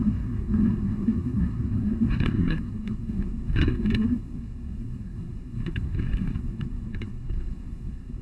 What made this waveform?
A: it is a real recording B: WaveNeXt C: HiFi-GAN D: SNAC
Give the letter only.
D